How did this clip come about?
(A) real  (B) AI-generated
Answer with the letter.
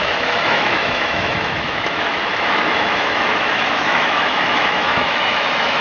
B